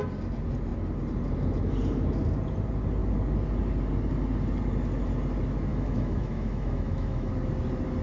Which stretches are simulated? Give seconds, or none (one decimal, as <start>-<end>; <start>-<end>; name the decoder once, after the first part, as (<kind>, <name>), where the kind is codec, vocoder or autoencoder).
5.7-7.3 (autoencoder, DAC-VAE)